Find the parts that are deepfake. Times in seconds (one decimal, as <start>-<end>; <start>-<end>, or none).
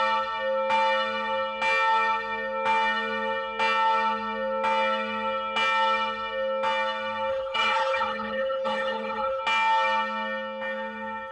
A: 7.3-9.4